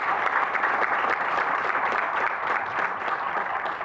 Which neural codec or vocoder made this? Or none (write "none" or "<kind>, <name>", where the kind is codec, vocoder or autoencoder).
vocoder, BigVGAN v2